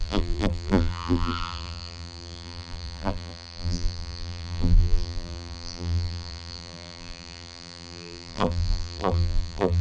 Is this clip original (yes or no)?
no